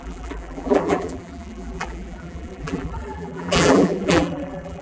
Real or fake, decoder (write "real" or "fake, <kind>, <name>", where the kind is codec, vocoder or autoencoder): fake, vocoder, BigVGAN v2